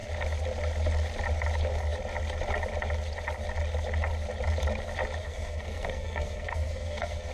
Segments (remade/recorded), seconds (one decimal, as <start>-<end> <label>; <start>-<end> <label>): 0.0-5.2 recorded; 5.2-7.3 remade